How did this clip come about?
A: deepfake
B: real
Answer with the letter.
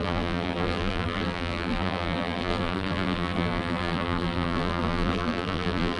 A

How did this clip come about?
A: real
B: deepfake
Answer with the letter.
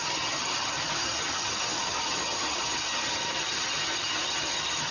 B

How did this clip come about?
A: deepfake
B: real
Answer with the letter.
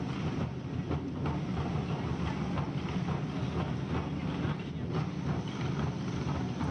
B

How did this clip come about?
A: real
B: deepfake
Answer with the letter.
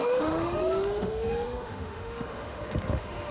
B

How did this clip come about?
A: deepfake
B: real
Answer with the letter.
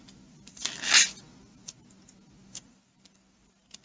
B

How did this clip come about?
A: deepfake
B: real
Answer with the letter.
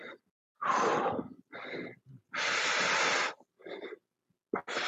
B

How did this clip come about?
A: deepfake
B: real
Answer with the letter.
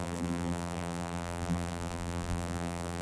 A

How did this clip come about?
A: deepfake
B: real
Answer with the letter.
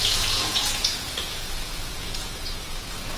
A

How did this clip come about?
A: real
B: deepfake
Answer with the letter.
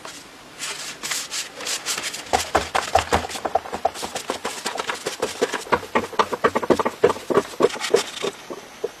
A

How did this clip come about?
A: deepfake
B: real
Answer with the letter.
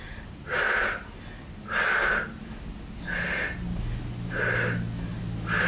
B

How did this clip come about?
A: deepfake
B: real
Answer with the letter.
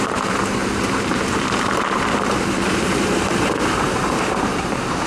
A